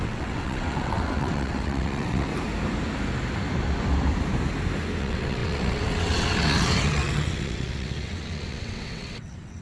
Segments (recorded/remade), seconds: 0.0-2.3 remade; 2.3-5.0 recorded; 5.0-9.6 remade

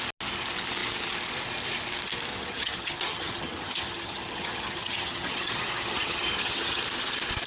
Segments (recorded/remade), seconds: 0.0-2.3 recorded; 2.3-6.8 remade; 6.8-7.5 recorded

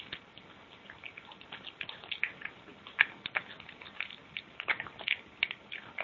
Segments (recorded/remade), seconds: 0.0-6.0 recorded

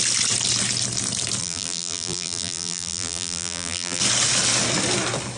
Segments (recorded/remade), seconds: 0.0-1.4 recorded; 1.4-4.0 remade; 4.0-5.4 recorded

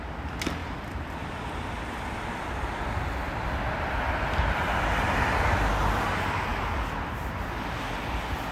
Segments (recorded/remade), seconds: 0.0-0.6 recorded; 0.6-2.4 remade; 2.4-6.5 recorded; 6.5-7.1 remade; 7.1-8.5 recorded

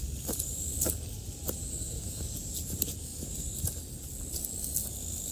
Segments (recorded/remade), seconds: 0.0-1.7 recorded; 1.7-2.2 remade; 2.2-5.3 recorded

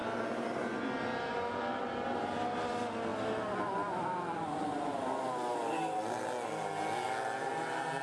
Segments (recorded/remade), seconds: 0.0-8.0 recorded

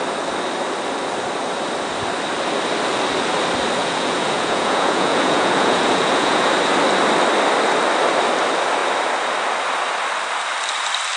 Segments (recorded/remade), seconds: 0.0-3.8 recorded; 3.8-6.5 remade; 6.5-11.2 recorded